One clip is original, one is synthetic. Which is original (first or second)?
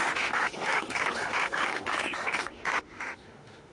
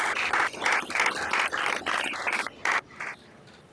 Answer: second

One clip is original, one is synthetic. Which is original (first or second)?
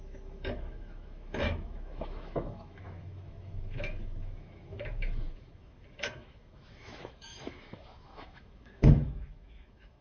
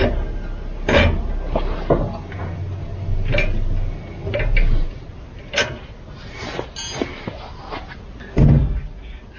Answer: second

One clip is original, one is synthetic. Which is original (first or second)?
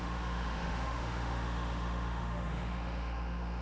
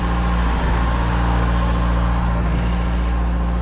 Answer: second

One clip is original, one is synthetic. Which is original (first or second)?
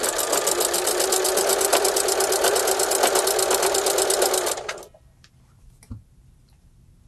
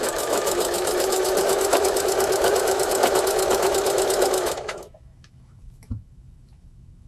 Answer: first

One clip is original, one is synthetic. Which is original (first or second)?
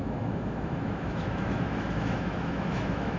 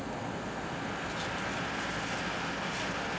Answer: second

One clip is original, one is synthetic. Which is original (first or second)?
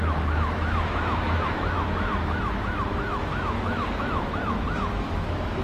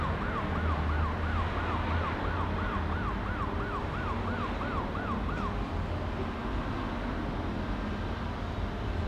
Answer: second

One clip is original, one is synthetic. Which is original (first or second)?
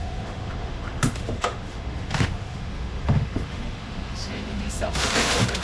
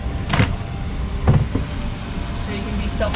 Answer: second